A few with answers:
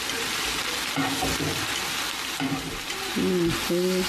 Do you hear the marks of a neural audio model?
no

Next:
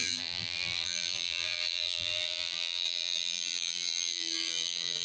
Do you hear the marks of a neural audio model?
yes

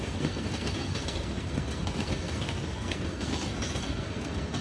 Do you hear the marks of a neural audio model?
yes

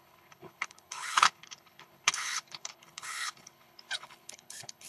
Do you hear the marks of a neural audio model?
yes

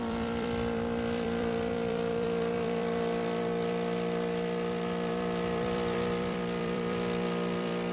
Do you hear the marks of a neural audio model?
yes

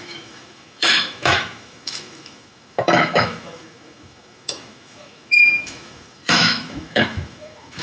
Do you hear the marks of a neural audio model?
yes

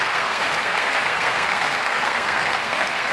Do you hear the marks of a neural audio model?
yes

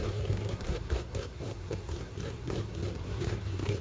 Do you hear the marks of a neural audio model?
yes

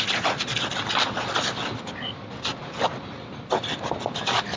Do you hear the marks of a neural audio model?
no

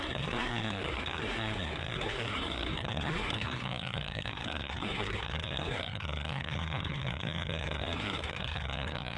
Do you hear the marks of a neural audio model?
yes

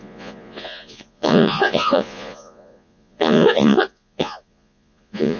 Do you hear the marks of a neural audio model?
yes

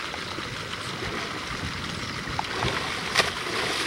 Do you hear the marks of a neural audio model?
no